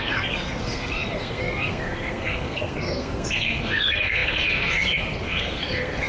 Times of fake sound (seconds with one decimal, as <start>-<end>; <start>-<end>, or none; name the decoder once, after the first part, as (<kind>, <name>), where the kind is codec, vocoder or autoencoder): 0.0-6.1 (codec, SNAC)